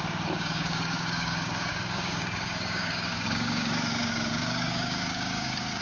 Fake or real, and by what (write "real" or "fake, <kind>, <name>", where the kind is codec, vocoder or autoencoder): fake, codec, DAC